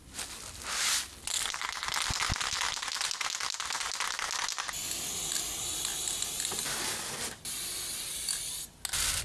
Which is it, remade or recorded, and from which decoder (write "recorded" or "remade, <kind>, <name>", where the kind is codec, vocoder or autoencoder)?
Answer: recorded